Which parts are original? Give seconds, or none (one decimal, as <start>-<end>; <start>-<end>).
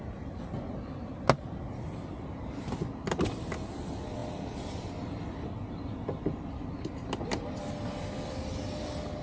0.0-9.2